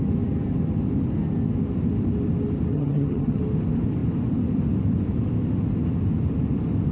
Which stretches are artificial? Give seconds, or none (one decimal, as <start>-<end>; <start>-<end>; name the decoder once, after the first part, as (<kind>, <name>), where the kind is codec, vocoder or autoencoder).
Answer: 2.7-3.4 (vocoder, HiFi-GAN)